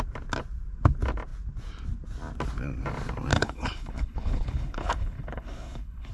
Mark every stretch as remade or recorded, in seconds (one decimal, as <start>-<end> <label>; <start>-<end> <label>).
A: 0.0-3.3 recorded; 3.3-6.1 remade